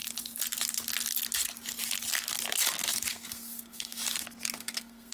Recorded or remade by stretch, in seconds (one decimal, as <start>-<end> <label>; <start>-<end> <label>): 0.0-3.1 recorded; 3.1-4.0 remade; 4.0-4.6 recorded; 4.6-5.1 remade